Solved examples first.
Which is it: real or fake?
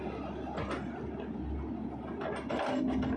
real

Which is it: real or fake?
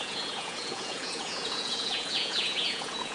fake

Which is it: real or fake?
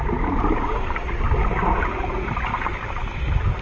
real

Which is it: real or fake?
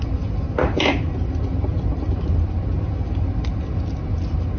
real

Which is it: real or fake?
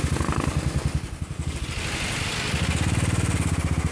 real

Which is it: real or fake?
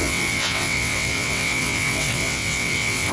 fake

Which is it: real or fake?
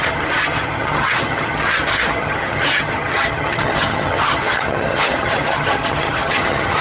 fake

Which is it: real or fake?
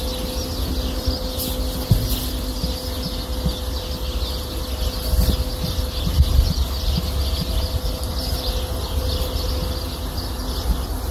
real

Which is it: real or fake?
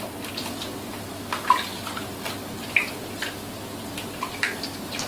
real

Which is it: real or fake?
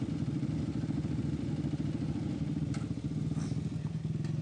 real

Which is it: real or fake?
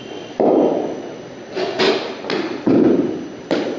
real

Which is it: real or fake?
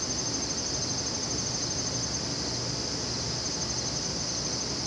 real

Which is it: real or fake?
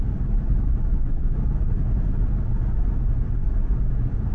real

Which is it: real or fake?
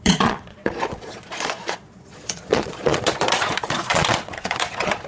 fake